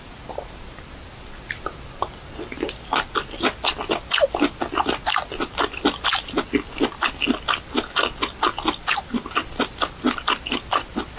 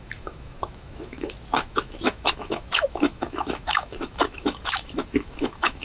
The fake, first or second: second